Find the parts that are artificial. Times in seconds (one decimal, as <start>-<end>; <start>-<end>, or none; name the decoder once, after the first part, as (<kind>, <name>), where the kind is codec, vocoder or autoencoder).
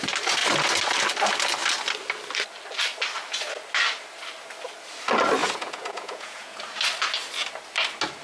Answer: 5.4-6.6 (vocoder, Vocos)